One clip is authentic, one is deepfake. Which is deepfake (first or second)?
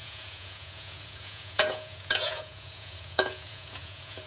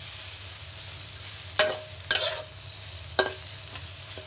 first